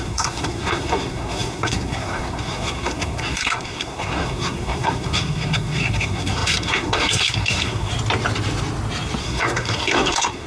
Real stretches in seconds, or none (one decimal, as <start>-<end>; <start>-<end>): 7.9-9.2